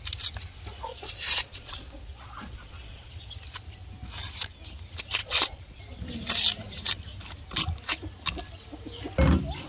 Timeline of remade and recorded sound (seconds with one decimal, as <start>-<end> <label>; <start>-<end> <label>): 0.0-0.9 recorded; 0.9-3.1 remade; 3.1-5.2 recorded; 5.2-5.8 remade; 5.8-9.7 recorded